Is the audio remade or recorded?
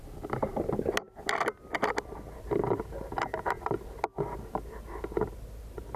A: recorded